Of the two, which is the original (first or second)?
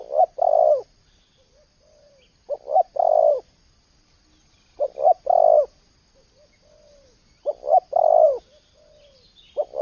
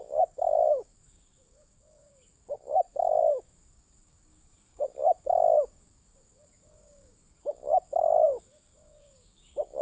first